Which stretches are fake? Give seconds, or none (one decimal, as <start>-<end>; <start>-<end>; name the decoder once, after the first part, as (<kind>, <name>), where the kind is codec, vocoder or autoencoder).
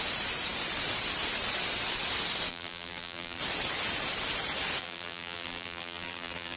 2.5-3.4 (vocoder, BigVGAN v2); 4.8-6.6